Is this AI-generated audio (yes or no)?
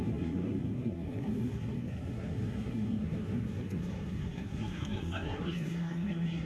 yes